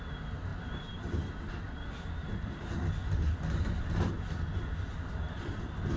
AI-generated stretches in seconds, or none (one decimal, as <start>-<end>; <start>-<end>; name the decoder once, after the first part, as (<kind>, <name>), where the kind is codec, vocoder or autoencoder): none